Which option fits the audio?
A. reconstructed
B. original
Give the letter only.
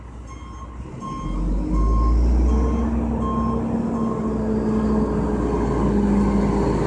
B